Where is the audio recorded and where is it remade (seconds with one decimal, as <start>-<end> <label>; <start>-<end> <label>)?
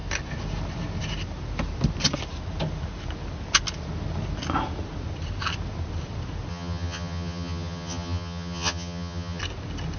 0.0-6.5 recorded; 6.5-9.4 remade; 9.4-10.0 recorded